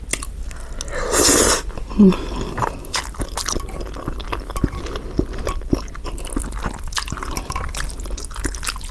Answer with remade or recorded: recorded